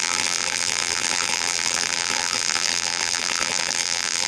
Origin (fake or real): fake